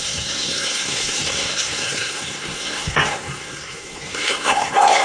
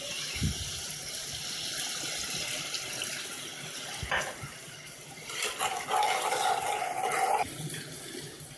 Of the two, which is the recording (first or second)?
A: second